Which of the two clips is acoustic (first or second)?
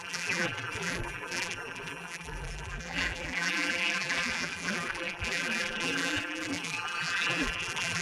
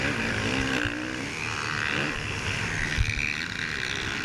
second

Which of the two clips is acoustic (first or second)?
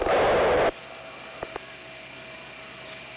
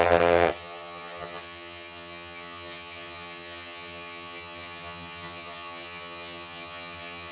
first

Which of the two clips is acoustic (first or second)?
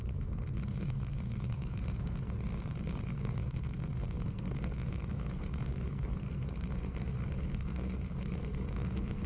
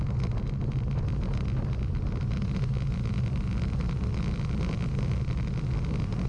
second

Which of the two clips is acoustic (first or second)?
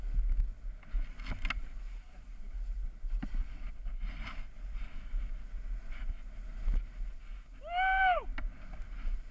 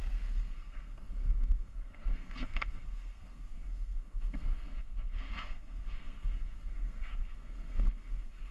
first